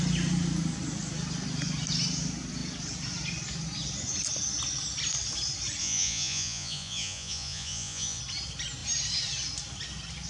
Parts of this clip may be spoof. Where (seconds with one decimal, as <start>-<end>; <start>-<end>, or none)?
5.8-8.2